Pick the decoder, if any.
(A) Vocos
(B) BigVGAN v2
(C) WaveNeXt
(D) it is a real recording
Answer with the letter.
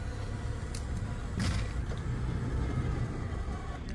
D